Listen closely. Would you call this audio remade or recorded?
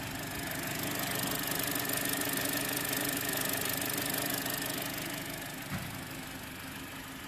recorded